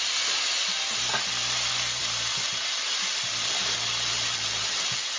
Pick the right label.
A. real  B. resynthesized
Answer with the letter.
A